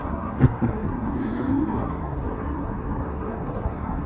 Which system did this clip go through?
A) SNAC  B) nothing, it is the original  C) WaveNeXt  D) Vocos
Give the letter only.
A